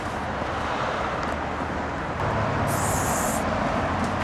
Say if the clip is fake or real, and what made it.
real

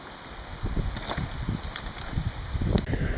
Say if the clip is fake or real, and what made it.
real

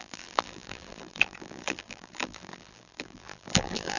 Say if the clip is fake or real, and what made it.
fake, vocoder, BigVGAN v2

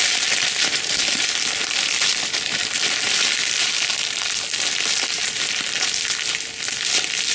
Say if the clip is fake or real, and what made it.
fake, vocoder, BigVGAN v2